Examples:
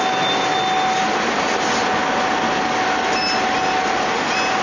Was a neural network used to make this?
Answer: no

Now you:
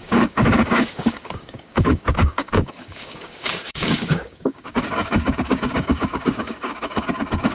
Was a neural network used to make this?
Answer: yes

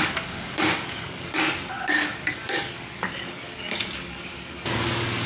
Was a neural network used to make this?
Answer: yes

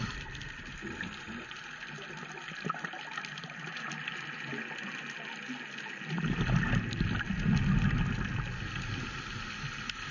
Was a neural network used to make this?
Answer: no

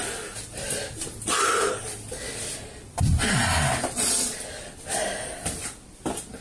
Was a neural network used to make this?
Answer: no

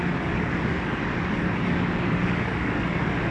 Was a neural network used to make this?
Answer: yes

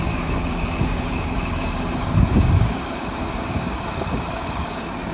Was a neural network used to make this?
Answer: yes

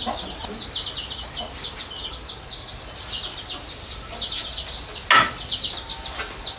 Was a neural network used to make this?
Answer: no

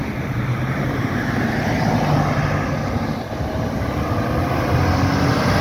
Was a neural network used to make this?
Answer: no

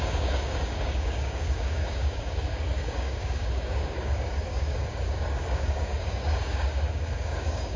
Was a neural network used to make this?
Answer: yes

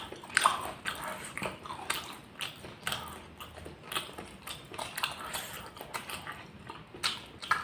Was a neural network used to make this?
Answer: no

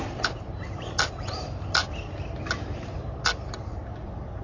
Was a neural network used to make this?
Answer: no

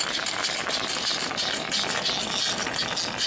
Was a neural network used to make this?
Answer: no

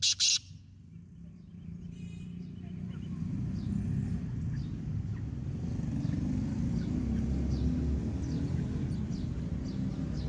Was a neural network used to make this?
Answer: no